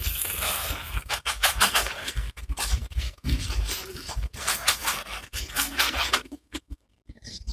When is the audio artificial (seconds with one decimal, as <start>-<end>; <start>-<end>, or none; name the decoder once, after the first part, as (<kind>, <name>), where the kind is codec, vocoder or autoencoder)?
0.0-7.5 (codec, SNAC)